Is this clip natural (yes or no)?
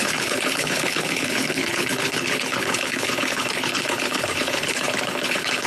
no